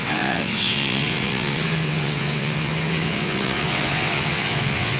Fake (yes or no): yes